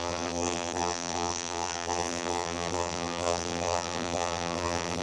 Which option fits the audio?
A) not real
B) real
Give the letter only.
A